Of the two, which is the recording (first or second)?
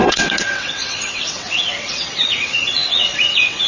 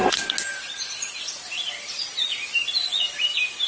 second